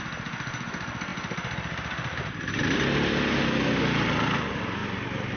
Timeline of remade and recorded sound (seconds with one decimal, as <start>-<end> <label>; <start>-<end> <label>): 0.0-5.4 recorded